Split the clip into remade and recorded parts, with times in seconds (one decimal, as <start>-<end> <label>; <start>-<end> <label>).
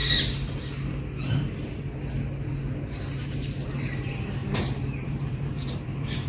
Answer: 0.0-3.8 recorded; 3.8-6.3 remade